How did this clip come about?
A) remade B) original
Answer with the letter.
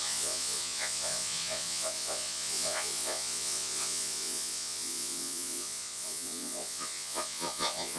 A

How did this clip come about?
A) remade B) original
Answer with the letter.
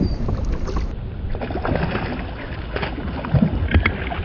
B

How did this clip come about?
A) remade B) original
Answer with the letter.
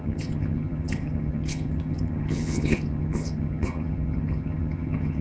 A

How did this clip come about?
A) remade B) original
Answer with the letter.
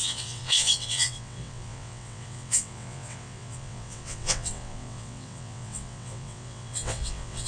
A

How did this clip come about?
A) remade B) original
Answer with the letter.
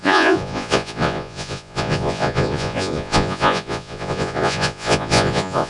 A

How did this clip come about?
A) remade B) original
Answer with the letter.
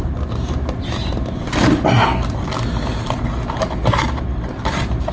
B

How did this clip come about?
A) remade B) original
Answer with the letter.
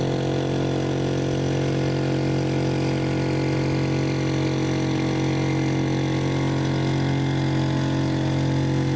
B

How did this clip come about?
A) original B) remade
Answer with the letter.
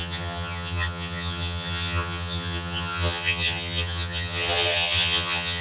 B